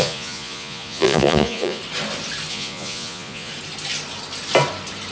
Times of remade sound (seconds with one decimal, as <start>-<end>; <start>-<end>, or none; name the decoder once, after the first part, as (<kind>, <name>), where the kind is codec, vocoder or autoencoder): 0.0-1.8 (vocoder, Vocos); 2.5-3.5